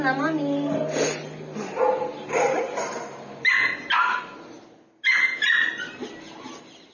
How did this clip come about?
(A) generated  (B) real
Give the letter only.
B